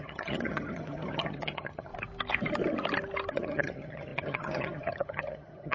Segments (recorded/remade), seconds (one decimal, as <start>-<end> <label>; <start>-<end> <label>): 0.0-1.9 remade; 1.9-3.3 recorded; 3.3-5.7 remade